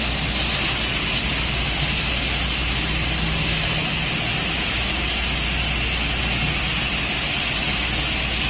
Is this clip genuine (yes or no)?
yes